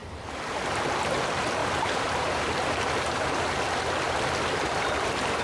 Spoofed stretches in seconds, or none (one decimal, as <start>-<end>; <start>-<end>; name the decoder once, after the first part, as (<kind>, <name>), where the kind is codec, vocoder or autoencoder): 0.0-0.5 (vocoder, BigVGAN v2); 1.6-3.4